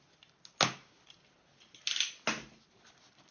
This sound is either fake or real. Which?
real